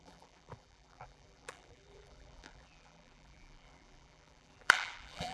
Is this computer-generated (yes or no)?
yes